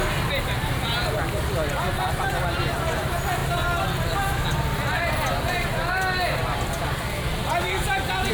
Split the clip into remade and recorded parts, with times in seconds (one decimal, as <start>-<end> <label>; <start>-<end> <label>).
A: 0.0-8.3 recorded

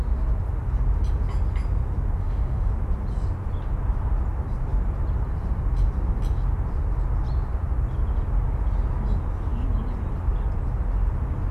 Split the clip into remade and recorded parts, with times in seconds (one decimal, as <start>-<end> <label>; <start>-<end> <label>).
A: 0.0-2.2 recorded; 2.2-2.7 remade; 2.7-11.5 recorded

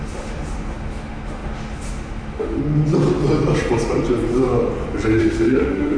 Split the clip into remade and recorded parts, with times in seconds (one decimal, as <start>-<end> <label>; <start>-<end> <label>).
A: 0.0-2.6 remade; 2.6-5.2 recorded; 5.2-6.0 remade

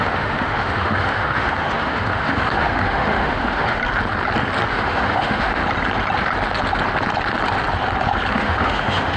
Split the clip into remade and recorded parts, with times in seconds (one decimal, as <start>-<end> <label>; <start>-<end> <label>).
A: 0.0-3.8 remade; 3.8-4.7 recorded; 4.7-5.6 remade; 5.6-8.3 recorded; 8.3-9.2 remade